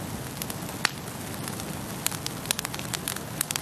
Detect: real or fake real